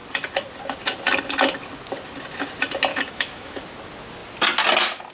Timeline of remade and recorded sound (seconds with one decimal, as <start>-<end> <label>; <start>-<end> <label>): 0.0-2.9 recorded; 2.9-3.6 remade; 3.6-5.1 recorded